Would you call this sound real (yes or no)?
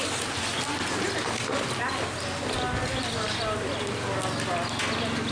yes